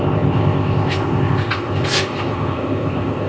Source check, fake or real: fake